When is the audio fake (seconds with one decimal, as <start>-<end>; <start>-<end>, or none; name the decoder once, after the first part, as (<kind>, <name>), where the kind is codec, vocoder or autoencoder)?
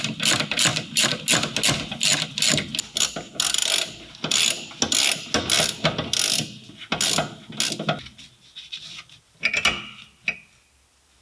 0.7-1.2 (vocoder, BigVGAN v2)